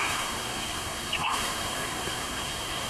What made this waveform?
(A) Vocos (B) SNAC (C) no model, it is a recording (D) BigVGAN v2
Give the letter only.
B